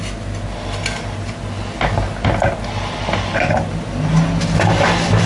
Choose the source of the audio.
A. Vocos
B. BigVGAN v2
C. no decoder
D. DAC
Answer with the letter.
C